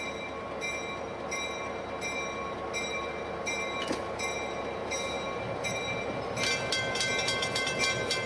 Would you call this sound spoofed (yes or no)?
no